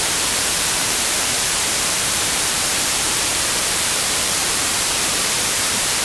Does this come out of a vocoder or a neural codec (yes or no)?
yes